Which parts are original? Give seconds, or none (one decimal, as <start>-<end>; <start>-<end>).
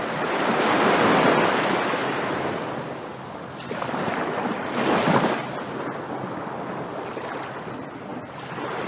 0.0-8.9